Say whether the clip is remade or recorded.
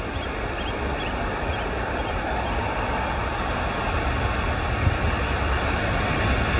recorded